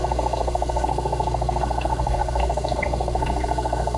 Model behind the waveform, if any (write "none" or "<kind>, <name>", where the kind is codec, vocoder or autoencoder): codec, SNAC